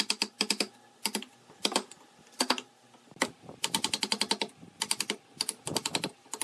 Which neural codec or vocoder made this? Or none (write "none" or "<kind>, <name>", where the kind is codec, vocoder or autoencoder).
none